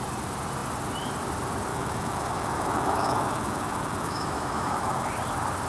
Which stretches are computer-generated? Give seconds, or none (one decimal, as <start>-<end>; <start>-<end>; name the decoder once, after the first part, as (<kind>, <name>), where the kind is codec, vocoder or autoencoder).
1.7-5.1 (autoencoder, DAC-VAE)